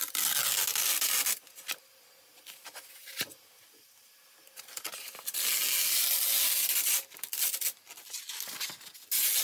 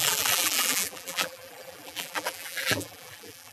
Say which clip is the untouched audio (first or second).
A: first